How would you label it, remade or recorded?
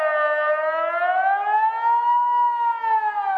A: recorded